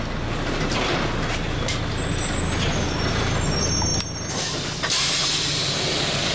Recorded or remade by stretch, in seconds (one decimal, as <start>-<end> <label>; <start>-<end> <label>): 0.0-6.3 recorded